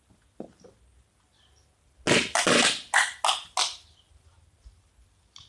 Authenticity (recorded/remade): recorded